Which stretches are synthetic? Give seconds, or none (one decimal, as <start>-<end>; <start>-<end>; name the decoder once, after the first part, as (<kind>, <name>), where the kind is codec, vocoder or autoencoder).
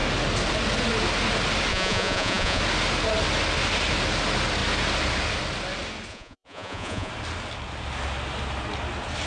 1.7-2.6 (vocoder, Vocos); 6.1-7.1